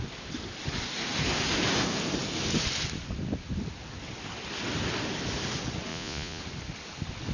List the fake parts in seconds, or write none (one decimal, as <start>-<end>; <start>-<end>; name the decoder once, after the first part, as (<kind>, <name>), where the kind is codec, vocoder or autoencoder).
5.9-6.4 (vocoder, Vocos)

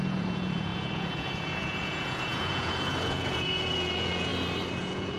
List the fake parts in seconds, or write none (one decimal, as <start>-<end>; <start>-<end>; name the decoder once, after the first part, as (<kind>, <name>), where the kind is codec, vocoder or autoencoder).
0.0-4.3 (vocoder, Vocos); 4.8-5.2